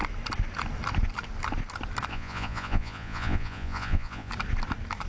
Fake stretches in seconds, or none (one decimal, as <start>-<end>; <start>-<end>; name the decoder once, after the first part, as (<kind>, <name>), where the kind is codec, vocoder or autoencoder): 2.1-4.3 (vocoder, Vocos)